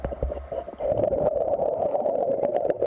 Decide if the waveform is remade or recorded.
recorded